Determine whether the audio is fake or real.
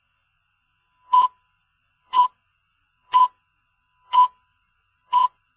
fake